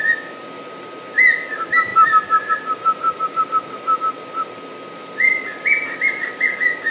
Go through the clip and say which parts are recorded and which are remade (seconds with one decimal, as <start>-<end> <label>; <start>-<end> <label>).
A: 0.0-6.9 recorded